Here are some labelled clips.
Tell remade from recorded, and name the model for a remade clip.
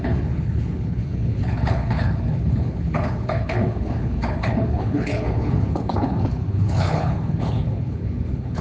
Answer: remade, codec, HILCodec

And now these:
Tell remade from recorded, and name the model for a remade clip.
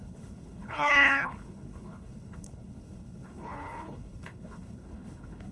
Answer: remade, codec, HILCodec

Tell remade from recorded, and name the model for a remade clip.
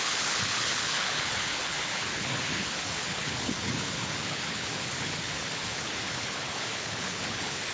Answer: remade, codec, HILCodec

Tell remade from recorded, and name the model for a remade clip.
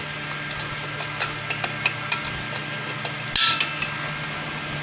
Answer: recorded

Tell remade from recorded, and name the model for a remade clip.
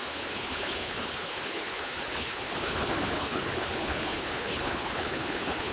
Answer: remade, codec, HILCodec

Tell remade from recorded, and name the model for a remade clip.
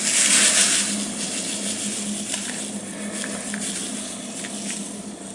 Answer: recorded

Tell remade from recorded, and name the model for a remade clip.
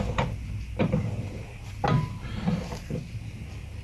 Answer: recorded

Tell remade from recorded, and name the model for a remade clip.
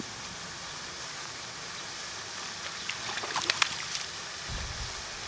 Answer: recorded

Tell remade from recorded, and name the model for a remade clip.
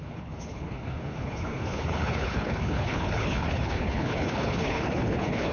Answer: remade, codec, HILCodec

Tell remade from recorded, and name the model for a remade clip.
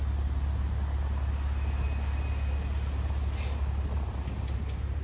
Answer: recorded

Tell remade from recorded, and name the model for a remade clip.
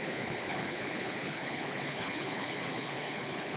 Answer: remade, codec, HILCodec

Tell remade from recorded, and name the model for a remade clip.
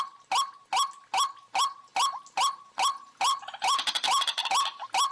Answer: recorded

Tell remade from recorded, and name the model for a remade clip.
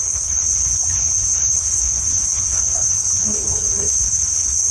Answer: remade, codec, HILCodec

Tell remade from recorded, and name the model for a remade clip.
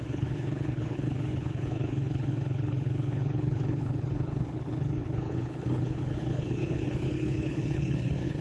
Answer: remade, codec, HILCodec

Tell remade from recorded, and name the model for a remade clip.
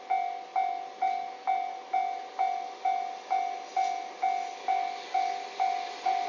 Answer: recorded